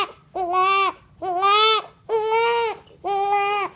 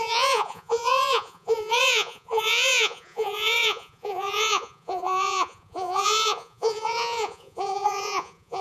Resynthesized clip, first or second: second